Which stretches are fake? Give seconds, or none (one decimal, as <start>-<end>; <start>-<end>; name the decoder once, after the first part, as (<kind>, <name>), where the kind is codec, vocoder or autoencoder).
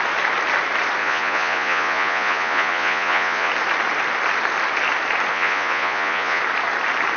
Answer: 1.0-3.5 (vocoder, Vocos); 5.3-6.4